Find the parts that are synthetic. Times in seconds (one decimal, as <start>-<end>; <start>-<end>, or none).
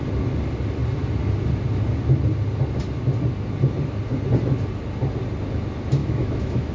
6.0-6.7